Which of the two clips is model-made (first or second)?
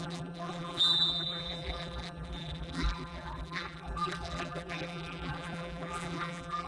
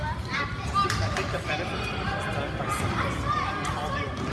first